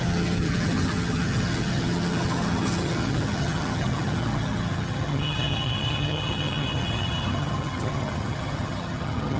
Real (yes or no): no